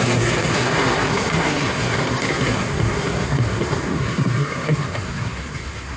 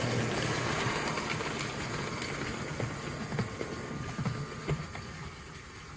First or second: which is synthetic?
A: first